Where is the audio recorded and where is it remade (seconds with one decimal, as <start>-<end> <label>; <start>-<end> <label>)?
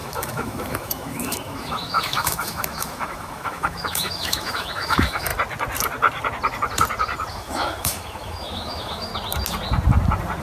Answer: 0.0-5.3 remade; 5.3-7.3 recorded; 7.3-9.1 remade; 9.1-10.4 recorded